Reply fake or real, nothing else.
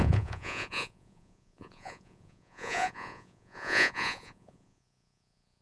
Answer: fake